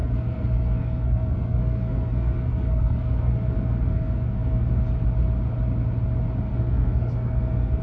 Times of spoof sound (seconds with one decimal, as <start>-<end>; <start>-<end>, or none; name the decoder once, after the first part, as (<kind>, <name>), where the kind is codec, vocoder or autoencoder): 0.0-4.7 (codec, SNAC); 6.5-7.8

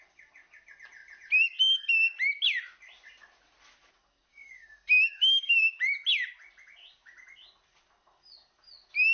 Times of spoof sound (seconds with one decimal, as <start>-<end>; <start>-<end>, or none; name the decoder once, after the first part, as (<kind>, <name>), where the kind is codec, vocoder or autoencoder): 4.3-5.7 (codec, DAC)

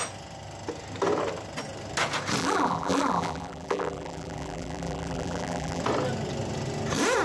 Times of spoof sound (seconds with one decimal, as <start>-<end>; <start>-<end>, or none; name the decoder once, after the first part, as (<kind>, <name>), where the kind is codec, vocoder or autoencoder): 2.4-5.8 (vocoder, BigVGAN v2)

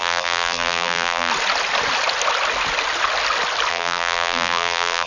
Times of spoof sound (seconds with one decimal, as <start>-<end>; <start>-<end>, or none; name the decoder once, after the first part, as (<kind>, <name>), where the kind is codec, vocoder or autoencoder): 0.0-1.3 (vocoder, BigVGAN v2); 3.7-5.1

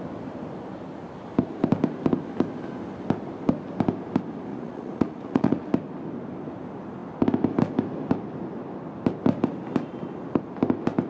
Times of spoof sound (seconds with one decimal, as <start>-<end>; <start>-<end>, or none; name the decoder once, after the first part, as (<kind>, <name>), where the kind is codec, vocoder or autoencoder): 4.5-5.7 (vocoder, Vocos)

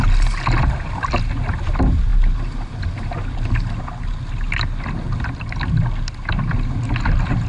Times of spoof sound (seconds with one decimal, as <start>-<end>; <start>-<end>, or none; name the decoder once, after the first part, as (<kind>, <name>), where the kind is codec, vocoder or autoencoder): none